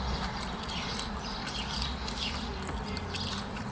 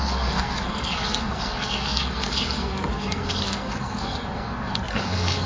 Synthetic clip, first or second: second